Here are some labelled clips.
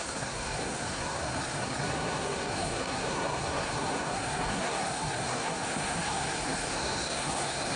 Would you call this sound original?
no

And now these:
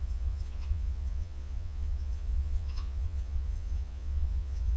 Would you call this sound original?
no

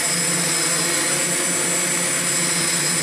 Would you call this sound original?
yes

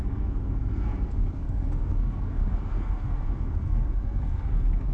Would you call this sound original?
no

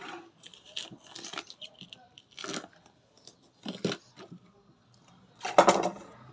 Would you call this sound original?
yes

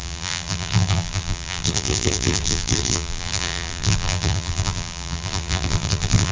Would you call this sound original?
no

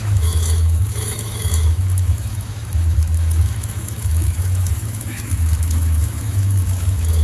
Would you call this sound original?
no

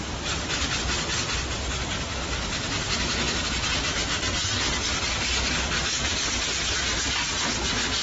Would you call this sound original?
yes